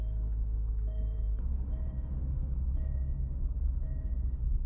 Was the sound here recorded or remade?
remade